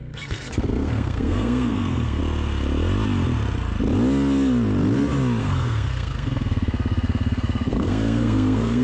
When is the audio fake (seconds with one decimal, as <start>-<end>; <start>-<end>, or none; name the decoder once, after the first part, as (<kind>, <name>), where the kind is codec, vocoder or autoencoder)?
0.0-2.2 (codec, SNAC); 5.4-8.8